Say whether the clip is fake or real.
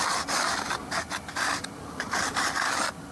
real